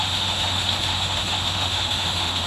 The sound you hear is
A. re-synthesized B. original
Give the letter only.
A